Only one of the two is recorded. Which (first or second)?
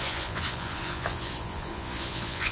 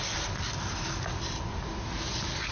second